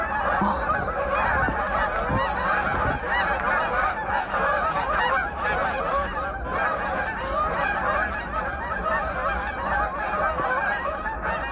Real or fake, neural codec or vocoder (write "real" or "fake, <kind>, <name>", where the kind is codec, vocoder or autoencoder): real